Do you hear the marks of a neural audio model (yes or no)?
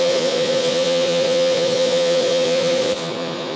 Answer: yes